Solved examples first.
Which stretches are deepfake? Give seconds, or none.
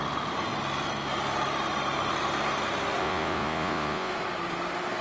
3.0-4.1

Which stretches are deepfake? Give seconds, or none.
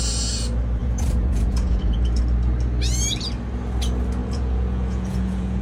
0.8-2.2; 4.2-5.6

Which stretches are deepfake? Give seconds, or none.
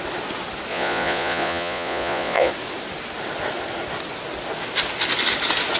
0.7-2.5